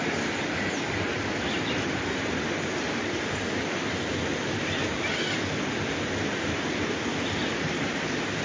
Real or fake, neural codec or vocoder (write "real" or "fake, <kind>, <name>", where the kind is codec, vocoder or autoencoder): real